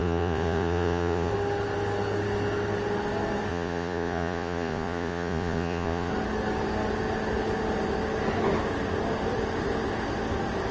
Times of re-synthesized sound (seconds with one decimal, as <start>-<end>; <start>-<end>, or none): 0.0-1.3; 3.5-6.1